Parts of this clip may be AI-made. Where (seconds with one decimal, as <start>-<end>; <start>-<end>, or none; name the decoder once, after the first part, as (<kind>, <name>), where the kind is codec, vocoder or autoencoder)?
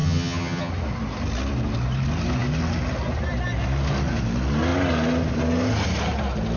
0.0-0.7 (vocoder, HiFi-GAN)